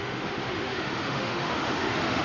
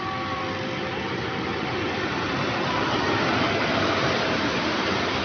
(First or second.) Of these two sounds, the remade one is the first